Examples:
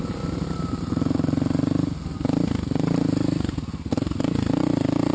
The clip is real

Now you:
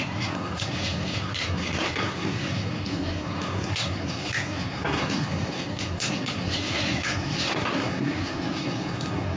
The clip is fake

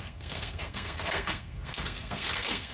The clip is fake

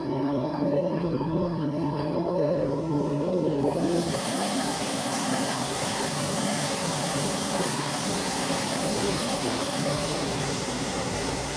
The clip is fake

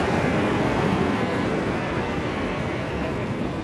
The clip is fake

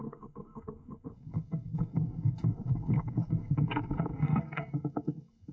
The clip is fake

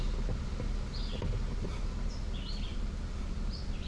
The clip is real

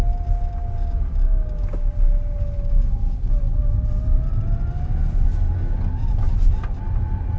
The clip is real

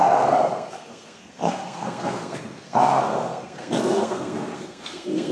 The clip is fake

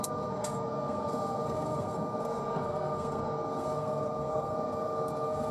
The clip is fake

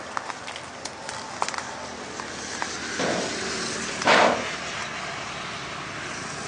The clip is real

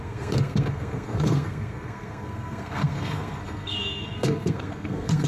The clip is fake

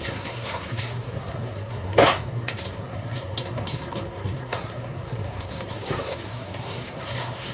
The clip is fake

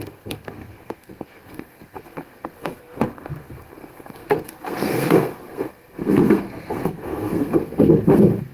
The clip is fake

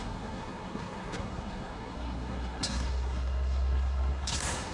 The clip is fake